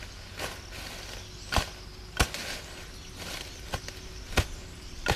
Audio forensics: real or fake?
real